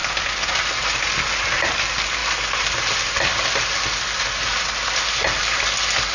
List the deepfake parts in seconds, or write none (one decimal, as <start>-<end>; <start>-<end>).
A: none